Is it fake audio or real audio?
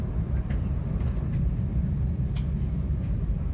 fake